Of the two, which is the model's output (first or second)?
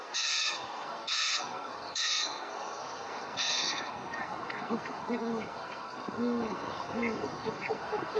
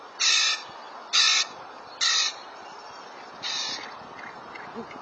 first